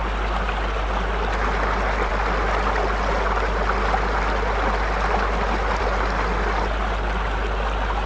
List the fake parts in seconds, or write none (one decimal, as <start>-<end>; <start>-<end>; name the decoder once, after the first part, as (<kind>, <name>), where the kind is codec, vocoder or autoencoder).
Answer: none